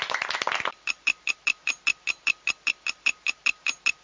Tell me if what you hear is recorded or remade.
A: remade